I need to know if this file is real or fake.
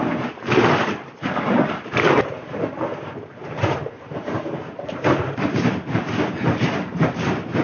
fake